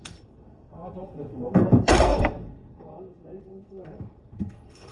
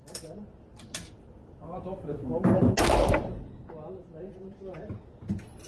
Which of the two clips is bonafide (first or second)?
second